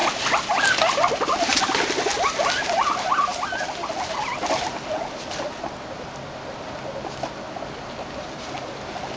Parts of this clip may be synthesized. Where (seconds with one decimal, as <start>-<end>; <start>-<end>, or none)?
none